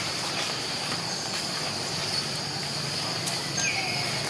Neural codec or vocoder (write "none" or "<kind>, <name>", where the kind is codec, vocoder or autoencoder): vocoder, BigVGAN v2